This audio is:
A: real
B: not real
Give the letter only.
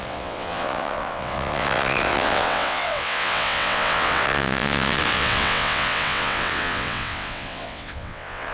B